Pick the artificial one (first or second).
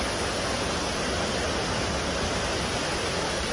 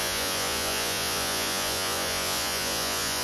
second